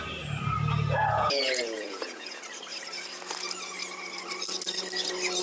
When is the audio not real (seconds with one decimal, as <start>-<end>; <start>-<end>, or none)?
1.1-2.4